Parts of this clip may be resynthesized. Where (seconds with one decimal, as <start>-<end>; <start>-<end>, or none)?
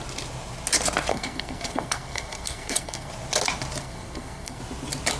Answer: 1.1-3.1; 3.8-4.6